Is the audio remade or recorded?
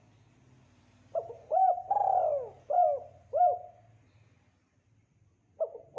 recorded